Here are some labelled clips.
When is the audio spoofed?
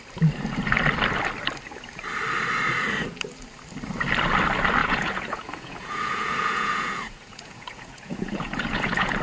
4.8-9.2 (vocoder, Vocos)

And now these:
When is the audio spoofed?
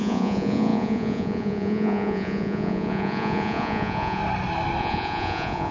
0.0-4.2 (vocoder, Vocos); 4.8-5.7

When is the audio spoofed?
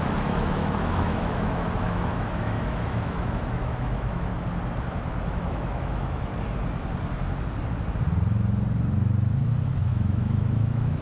0.0-4.3 (autoencoder, DAC-VAE); 5.4-6.3; 9.8-11.0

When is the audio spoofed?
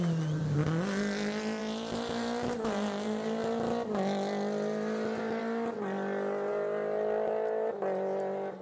none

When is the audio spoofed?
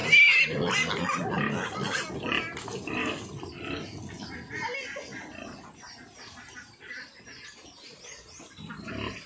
none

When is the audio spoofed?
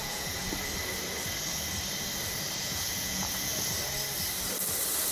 0.0-0.4 (vocoder, Vocos); 2.6-3.5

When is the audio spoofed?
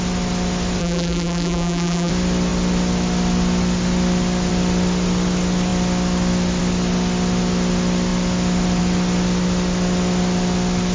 0.8-2.1 (vocoder, BigVGAN v2)